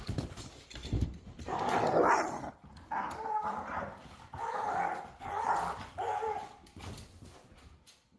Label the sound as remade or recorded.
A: recorded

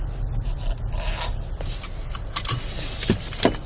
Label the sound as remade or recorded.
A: recorded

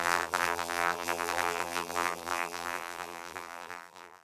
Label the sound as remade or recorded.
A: remade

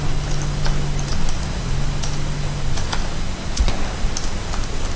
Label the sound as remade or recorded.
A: recorded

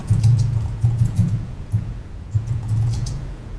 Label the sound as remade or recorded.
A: remade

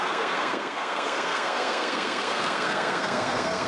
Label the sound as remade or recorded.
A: remade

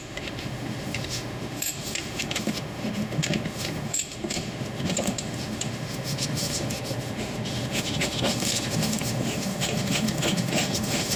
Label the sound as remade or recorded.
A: remade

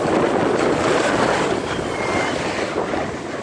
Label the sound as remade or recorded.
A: recorded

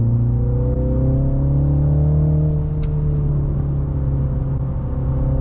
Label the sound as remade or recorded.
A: recorded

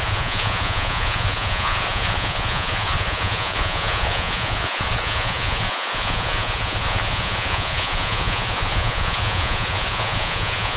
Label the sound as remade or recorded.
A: remade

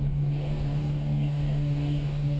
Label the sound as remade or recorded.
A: remade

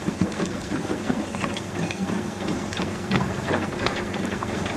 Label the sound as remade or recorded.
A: remade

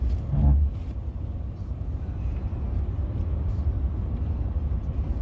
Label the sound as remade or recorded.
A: recorded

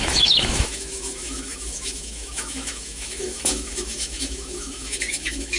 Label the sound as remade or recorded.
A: remade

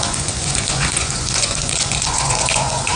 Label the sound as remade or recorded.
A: remade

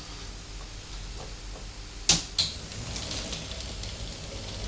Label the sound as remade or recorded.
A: recorded